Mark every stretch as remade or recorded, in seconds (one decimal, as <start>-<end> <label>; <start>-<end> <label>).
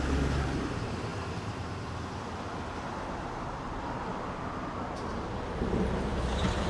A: 0.0-4.1 remade; 4.1-5.1 recorded; 5.1-6.7 remade